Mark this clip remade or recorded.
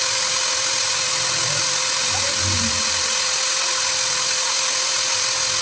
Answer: recorded